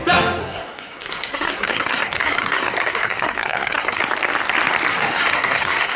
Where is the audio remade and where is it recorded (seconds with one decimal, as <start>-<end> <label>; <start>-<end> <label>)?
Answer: 0.0-0.4 recorded; 0.4-4.0 remade; 4.0-4.9 recorded; 4.9-6.0 remade